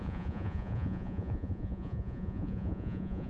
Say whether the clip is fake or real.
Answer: fake